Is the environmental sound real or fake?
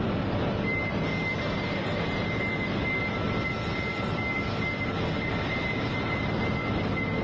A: real